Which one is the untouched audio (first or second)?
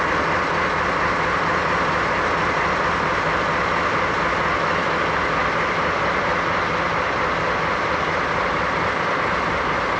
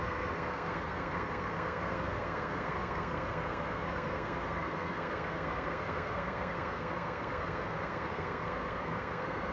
first